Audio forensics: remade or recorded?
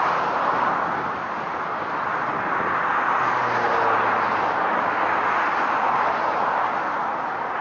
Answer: recorded